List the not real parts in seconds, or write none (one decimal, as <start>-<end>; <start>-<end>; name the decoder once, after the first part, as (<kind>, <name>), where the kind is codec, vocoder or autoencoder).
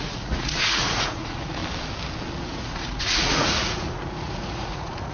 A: 0.0-1.6 (vocoder, Vocos); 2.4-5.1